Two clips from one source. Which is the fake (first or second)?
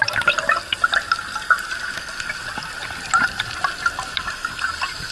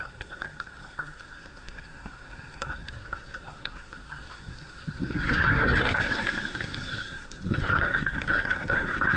second